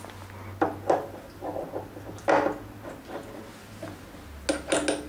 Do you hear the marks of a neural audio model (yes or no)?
no